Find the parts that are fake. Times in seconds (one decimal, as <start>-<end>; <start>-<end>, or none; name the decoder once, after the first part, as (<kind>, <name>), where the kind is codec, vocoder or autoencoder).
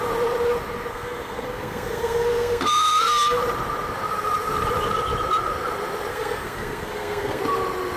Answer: 0.9-3.4 (codec, SNAC); 6.1-7.4